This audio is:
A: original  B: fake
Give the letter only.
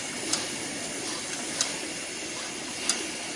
A